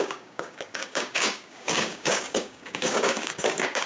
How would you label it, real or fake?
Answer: fake